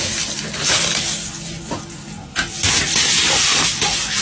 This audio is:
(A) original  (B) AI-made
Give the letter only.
A